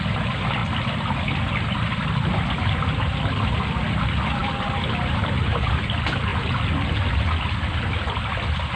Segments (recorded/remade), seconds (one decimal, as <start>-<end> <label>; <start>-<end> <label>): 0.0-4.4 recorded; 4.4-5.8 remade; 5.8-8.8 recorded